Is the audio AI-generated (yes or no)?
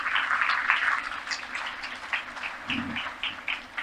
yes